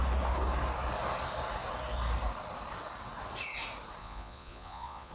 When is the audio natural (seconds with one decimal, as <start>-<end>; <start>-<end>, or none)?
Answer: 0.0-4.0